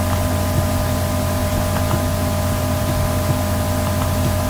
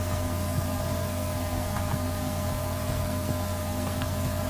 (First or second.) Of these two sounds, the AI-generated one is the second